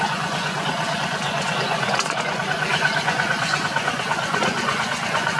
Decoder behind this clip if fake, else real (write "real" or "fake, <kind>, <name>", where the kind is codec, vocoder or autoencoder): fake, vocoder, Vocos